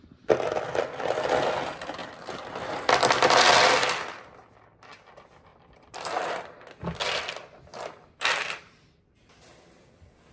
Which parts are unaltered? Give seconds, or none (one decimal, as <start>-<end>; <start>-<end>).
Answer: 0.0-2.0; 2.9-5.5; 6.2-7.7; 9.4-10.3